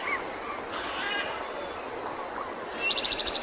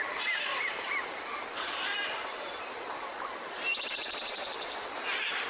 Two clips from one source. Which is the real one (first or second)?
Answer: first